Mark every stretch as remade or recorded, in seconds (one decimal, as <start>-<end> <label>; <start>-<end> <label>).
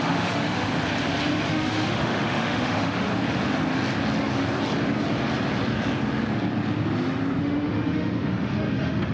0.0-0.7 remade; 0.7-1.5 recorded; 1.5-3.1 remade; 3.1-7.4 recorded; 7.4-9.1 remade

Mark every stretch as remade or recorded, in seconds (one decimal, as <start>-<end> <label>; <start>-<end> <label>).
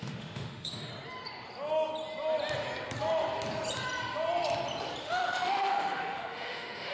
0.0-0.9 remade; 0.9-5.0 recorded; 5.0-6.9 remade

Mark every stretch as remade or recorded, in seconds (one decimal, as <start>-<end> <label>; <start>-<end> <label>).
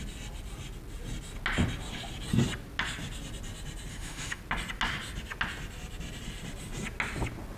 0.0-3.9 recorded; 3.9-4.4 remade; 4.4-7.6 recorded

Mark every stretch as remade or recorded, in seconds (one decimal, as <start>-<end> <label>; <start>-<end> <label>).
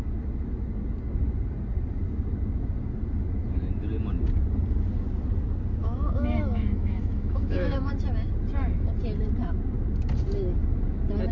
0.0-5.8 recorded; 5.8-7.9 remade; 7.9-11.3 recorded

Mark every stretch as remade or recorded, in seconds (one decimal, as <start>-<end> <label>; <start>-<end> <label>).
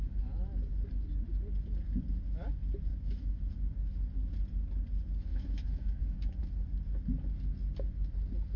0.0-2.9 recorded; 2.9-3.5 remade; 3.5-5.3 recorded; 5.3-6.4 remade; 6.4-8.6 recorded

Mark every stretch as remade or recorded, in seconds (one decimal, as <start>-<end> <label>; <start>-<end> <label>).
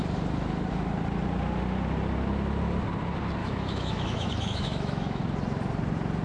0.0-3.4 recorded; 3.4-5.2 remade; 5.2-6.2 recorded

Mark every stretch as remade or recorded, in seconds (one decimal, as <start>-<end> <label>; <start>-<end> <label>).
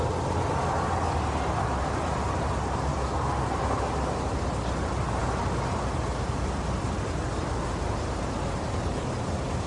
0.0-9.7 recorded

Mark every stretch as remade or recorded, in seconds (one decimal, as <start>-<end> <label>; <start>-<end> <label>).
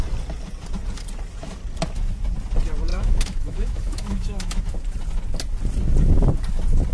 0.0-2.9 recorded; 2.9-4.6 remade; 4.6-6.9 recorded